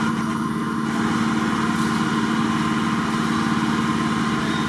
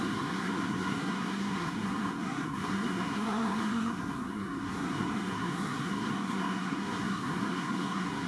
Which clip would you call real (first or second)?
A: first